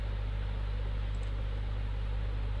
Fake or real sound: real